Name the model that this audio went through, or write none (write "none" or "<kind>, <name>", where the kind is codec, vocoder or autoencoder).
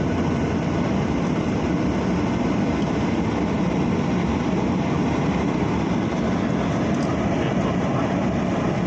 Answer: none